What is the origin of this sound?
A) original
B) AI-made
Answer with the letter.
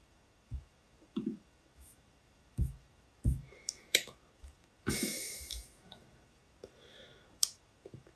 B